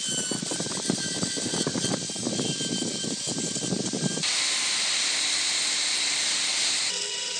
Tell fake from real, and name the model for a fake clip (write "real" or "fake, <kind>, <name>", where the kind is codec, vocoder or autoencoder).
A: fake, vocoder, BigVGAN v2